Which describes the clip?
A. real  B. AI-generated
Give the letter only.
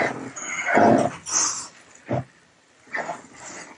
A